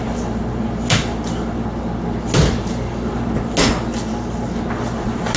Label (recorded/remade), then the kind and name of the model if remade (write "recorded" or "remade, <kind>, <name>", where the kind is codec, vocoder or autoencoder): recorded